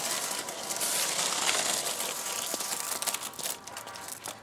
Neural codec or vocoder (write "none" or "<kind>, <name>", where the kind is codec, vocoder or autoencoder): none